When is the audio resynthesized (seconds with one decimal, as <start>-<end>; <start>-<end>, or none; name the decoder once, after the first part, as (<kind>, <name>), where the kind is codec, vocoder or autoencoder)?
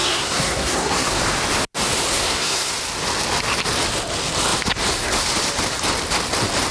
0.0-1.2 (codec, SNAC); 2.1-2.7